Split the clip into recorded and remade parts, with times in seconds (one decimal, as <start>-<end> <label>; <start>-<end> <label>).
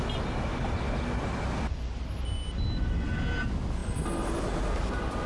0.0-5.3 recorded